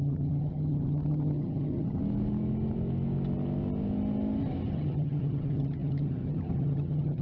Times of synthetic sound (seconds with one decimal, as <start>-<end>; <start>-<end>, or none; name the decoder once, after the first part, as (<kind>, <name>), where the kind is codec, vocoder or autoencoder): 0.0-2.0 (vocoder, HiFi-GAN); 4.7-7.2

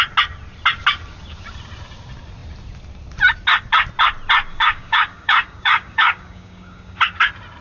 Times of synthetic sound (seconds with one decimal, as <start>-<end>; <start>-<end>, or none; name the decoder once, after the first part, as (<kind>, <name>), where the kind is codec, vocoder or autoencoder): 4.5-7.0 (codec, DAC)

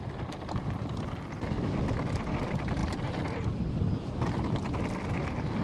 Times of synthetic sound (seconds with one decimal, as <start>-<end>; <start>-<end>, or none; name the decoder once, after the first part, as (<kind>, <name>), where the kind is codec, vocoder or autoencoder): 0.0-2.8 (vocoder, BigVGAN v2); 3.7-5.6

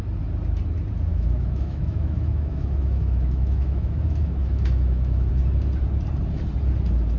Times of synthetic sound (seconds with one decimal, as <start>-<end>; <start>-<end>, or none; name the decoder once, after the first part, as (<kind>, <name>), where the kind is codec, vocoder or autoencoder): 1.1-5.3 (autoencoder, DAC-VAE)

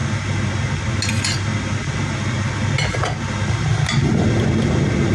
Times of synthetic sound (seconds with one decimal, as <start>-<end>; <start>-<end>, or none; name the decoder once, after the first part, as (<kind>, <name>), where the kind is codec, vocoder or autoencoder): none